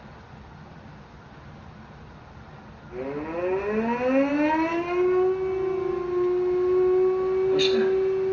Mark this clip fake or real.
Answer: real